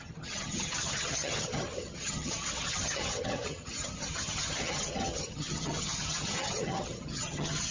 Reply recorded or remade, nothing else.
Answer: remade